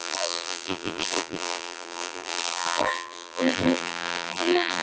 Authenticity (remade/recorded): remade